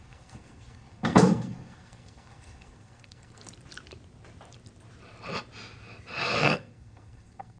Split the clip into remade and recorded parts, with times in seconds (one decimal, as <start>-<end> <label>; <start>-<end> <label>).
0.0-3.4 remade; 3.4-6.4 recorded; 6.4-7.6 remade